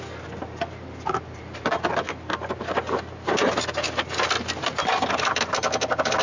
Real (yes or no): yes